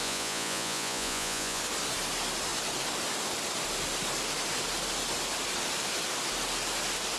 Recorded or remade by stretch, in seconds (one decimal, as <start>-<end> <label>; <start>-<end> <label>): 0.0-1.6 remade; 1.6-7.2 recorded